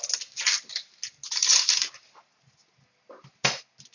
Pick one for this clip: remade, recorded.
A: recorded